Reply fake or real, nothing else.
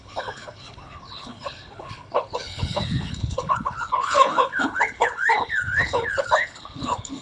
fake